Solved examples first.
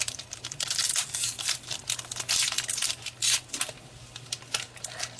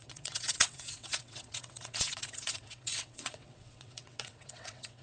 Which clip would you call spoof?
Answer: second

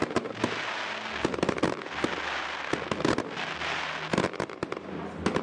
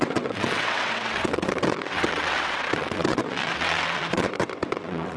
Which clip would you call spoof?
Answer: second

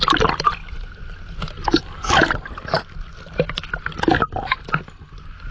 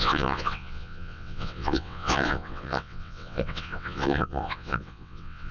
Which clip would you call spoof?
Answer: second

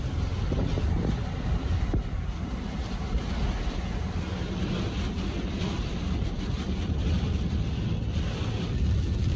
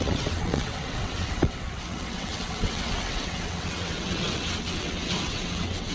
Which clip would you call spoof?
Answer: second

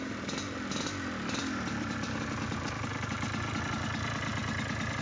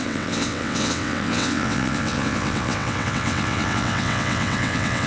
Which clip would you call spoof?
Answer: second